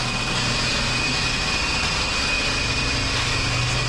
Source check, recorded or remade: recorded